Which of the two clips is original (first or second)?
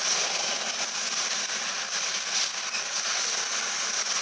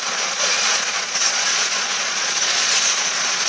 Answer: first